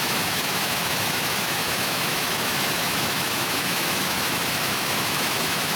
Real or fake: fake